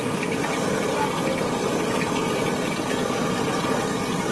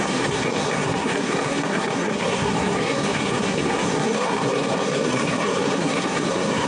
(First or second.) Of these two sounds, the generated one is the second